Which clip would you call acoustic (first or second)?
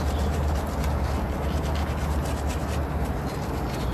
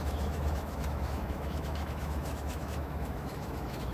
first